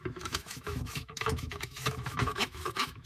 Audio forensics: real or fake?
fake